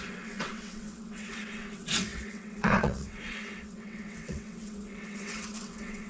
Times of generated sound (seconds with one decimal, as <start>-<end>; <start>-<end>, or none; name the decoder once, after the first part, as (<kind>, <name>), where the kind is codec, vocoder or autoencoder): 0.0-6.1 (vocoder, WaveNeXt)